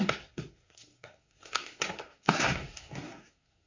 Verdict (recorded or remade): remade